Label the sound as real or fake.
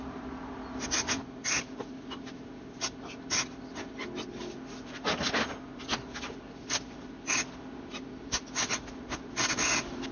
real